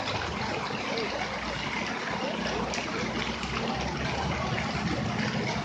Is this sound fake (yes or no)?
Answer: no